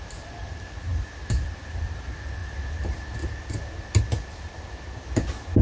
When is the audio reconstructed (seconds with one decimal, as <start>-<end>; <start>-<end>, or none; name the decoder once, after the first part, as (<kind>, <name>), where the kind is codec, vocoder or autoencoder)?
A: none